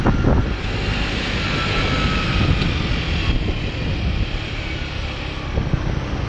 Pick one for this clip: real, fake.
real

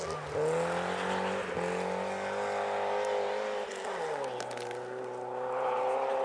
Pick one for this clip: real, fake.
real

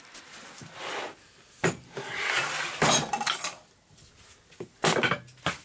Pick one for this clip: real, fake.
real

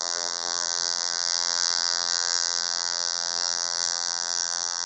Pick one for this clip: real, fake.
fake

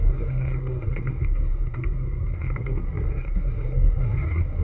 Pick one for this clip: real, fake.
fake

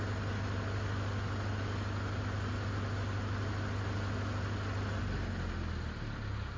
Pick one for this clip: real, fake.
real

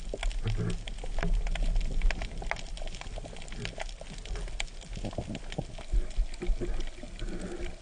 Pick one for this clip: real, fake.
real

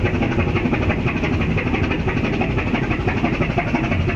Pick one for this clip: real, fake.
real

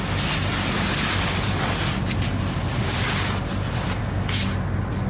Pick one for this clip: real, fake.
real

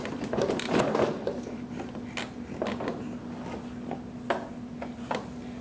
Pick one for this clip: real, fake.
real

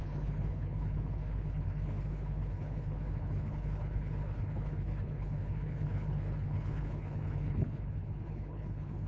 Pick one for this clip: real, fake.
fake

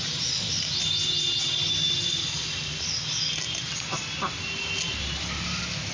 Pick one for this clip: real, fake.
real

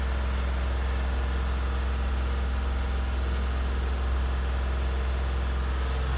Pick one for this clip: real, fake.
real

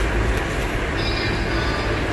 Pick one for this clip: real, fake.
real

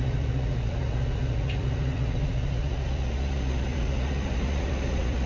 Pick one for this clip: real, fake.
fake